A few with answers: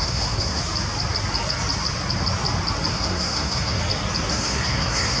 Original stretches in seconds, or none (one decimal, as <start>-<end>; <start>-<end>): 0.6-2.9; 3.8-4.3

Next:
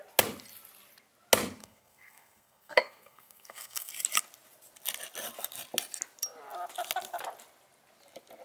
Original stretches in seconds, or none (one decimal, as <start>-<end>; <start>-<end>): 0.0-1.6; 3.9-8.4

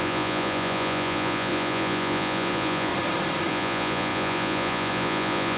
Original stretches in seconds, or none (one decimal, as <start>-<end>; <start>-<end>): 2.9-3.5

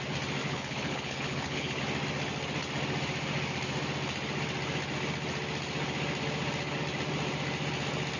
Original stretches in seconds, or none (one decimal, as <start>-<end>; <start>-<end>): 0.0-0.4; 1.8-8.2